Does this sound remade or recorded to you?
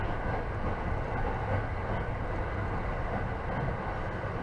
recorded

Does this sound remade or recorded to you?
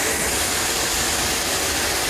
recorded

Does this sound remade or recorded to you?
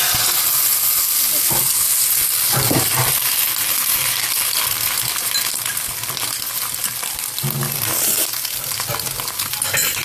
recorded